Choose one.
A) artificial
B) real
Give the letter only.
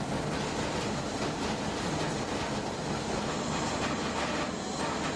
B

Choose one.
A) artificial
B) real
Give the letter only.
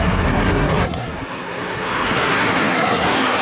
A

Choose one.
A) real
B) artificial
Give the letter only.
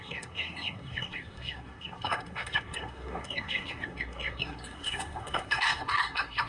B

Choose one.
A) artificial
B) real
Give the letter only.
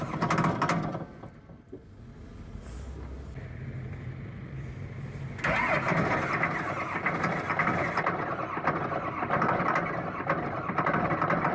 B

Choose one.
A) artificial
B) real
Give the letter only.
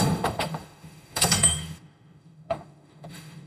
A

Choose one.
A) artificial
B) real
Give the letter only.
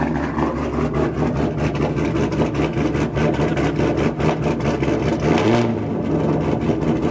B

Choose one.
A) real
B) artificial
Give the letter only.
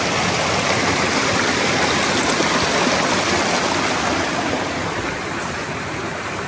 A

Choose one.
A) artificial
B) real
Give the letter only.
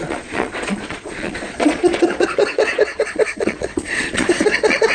A